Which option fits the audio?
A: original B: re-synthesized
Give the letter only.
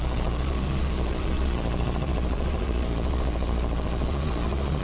B